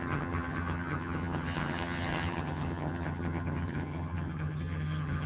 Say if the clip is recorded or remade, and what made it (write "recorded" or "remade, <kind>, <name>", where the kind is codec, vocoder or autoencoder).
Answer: remade, vocoder, HiFi-GAN